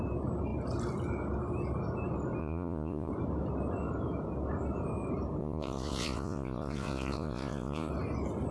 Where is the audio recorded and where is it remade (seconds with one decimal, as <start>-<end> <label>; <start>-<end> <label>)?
0.0-2.4 recorded; 2.4-3.1 remade; 3.1-5.4 recorded; 5.4-7.9 remade; 7.9-8.5 recorded

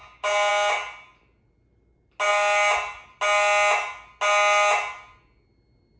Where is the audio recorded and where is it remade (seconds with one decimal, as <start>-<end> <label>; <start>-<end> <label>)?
0.0-6.0 recorded

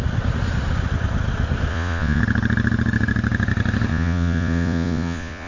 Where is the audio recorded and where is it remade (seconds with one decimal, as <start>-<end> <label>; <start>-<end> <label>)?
0.0-1.7 recorded; 1.7-2.2 remade; 2.2-3.9 recorded; 3.9-5.5 remade